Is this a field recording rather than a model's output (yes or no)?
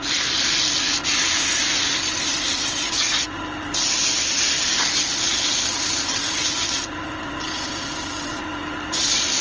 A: yes